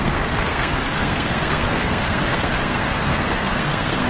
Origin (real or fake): fake